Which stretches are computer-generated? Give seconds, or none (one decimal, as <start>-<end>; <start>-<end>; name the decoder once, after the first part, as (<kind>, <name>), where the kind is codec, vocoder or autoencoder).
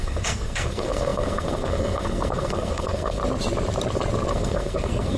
0.0-3.2 (codec, SNAC); 4.3-5.2